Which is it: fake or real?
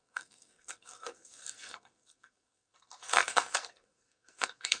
fake